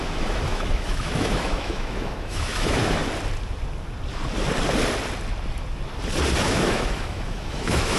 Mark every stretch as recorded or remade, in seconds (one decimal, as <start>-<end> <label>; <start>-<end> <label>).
0.0-3.0 remade; 3.0-6.4 recorded; 6.4-8.0 remade